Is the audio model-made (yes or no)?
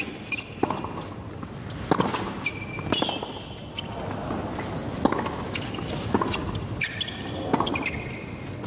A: no